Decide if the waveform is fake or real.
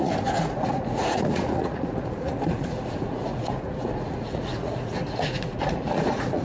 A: fake